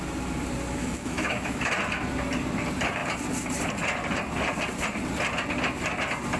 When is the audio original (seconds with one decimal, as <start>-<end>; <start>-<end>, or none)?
0.0-0.8; 1.7-6.4